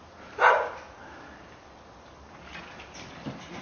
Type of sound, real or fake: real